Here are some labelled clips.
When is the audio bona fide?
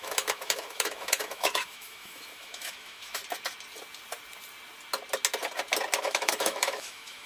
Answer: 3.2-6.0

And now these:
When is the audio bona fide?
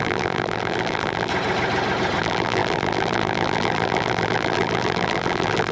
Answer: 1.3-2.2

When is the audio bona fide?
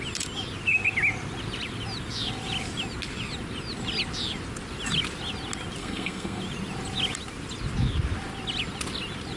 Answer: 0.0-5.8; 6.4-9.4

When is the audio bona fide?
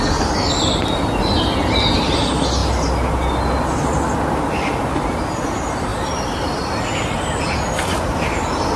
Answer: 0.0-8.8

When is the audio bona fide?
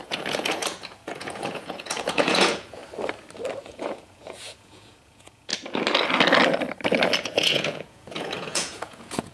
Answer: 2.8-3.6; 5.5-7.2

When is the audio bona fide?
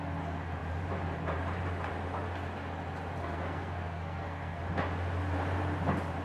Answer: 0.0-3.2; 4.6-6.2